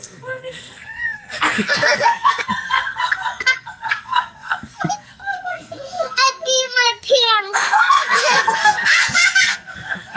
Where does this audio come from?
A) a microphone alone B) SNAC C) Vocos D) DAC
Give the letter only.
B